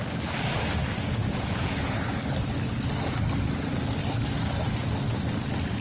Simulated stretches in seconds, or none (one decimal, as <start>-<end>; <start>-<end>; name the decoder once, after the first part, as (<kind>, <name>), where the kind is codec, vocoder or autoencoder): 0.8-2.2 (vocoder, Vocos)